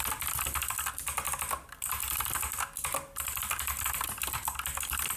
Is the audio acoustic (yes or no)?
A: yes